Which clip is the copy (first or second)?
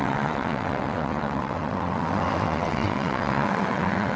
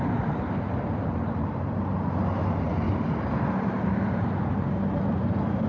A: first